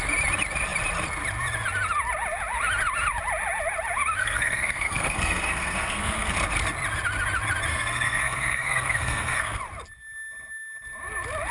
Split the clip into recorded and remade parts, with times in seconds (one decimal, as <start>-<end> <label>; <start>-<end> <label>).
0.0-4.2 recorded; 4.2-6.3 remade; 6.3-7.7 recorded; 7.7-9.6 remade; 9.6-11.5 recorded